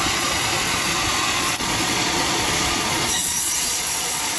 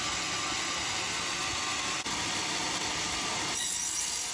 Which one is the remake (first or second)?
first